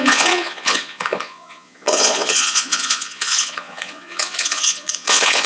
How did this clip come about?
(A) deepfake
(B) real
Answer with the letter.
A